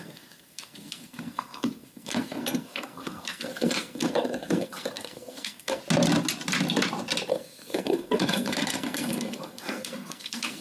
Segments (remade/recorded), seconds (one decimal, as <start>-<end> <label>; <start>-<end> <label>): 0.0-5.8 remade; 5.8-7.3 recorded; 7.3-10.6 remade